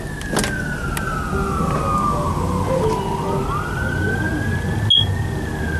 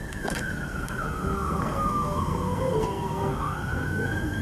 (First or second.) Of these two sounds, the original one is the first